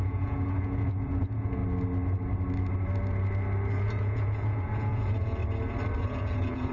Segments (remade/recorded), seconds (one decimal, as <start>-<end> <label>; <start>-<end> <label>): 0.0-1.6 remade; 1.6-3.7 recorded; 3.7-5.4 remade; 5.4-6.0 recorded; 6.0-6.7 remade